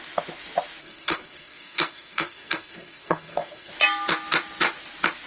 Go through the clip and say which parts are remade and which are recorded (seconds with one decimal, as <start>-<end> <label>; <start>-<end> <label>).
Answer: 0.0-0.8 recorded; 0.8-3.7 remade; 3.7-5.3 recorded

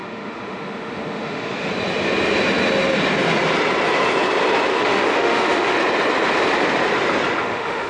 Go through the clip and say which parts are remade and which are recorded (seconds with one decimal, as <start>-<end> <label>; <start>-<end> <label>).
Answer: 0.0-1.7 remade; 1.7-4.8 recorded; 4.8-5.8 remade; 5.8-7.4 recorded; 7.4-7.9 remade